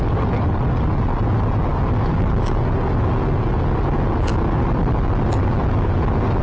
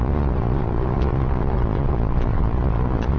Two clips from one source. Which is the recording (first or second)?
first